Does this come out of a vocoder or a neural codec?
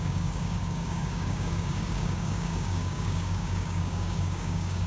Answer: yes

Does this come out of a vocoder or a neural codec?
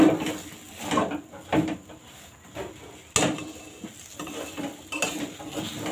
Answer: no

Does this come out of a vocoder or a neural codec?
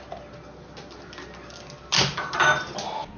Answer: no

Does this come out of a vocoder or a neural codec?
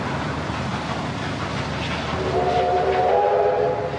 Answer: no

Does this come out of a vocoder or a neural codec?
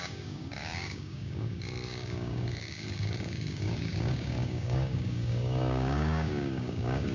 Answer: yes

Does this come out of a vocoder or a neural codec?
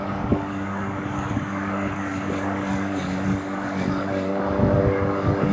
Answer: yes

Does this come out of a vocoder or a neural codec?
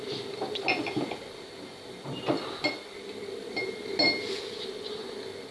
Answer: no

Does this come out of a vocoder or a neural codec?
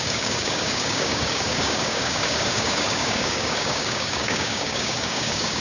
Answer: yes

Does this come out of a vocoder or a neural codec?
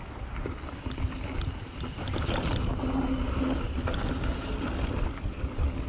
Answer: no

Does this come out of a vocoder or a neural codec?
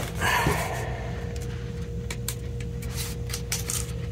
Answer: no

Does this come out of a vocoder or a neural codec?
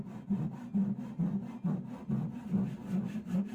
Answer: no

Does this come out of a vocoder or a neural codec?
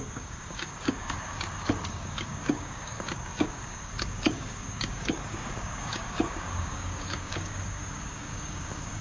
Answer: yes